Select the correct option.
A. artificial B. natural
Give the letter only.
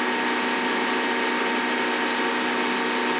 B